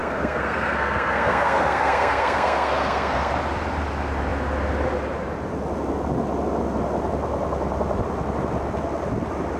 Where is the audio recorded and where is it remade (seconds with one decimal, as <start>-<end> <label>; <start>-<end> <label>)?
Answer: 0.0-3.3 remade; 3.3-9.6 recorded